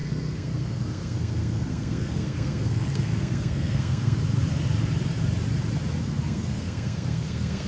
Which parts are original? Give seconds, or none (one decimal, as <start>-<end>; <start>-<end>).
4.2-6.0